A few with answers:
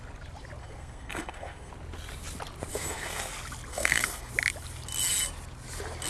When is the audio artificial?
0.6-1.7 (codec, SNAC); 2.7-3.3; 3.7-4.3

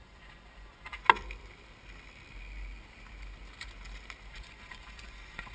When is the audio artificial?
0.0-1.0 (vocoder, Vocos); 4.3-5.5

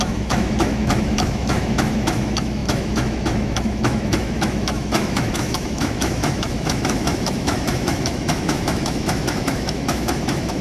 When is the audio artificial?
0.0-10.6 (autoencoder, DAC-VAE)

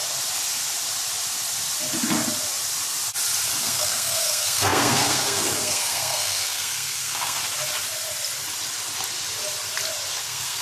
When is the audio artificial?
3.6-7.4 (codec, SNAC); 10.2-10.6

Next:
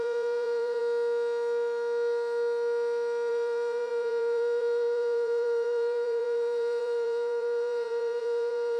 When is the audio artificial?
0.0-0.8 (vocoder, BigVGAN v2); 3.3-8.8